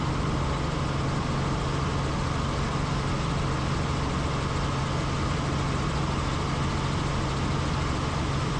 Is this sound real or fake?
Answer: real